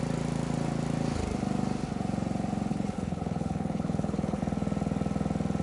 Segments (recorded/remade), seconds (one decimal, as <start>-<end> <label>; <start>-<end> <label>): 0.0-2.7 recorded; 2.7-4.4 remade; 4.4-5.6 recorded